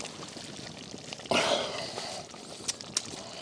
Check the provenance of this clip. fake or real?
real